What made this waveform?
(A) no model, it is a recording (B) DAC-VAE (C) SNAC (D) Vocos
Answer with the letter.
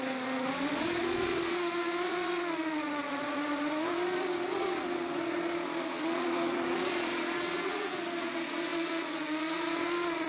D